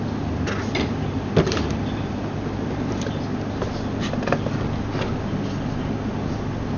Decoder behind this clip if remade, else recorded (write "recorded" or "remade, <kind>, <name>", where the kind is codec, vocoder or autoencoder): recorded